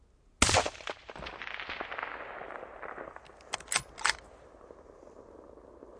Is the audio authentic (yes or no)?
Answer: yes